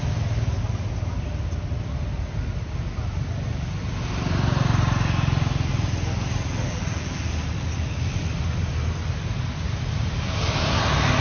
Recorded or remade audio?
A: recorded